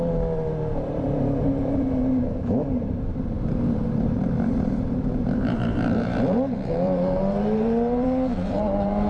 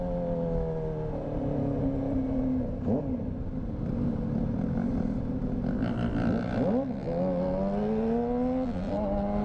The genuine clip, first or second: second